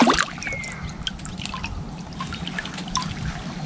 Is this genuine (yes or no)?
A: yes